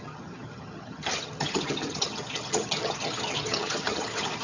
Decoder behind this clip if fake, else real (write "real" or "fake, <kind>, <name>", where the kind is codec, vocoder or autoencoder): fake, vocoder, HiFi-GAN